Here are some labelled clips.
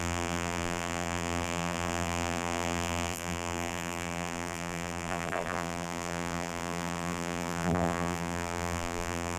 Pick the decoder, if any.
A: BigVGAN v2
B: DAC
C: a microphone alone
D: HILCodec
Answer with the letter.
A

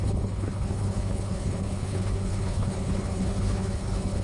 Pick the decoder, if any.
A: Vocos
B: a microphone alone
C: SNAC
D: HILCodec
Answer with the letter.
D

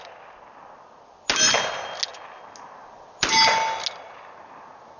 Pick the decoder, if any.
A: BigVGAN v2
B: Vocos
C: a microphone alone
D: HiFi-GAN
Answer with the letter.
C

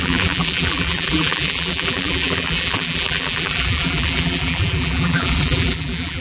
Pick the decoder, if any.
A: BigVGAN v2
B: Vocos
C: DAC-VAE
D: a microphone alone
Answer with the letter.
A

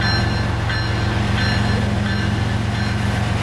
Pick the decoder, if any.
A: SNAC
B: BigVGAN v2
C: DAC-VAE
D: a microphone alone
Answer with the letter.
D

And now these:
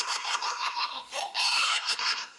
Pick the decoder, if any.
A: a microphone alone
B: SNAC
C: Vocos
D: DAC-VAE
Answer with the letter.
B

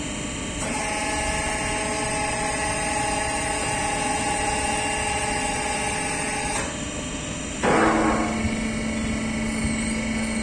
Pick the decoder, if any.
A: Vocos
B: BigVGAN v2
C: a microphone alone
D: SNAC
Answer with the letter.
C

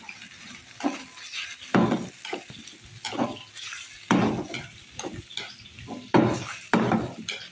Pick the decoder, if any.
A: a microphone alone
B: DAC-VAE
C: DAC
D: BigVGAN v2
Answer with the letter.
A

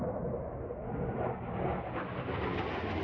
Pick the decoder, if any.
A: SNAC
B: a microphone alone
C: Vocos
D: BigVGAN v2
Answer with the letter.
B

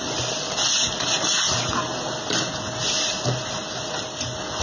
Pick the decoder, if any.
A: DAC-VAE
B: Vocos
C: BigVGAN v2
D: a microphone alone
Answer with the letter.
D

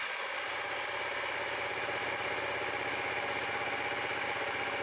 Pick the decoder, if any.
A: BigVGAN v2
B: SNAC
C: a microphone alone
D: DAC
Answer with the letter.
C